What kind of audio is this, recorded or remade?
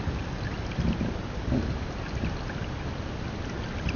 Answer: recorded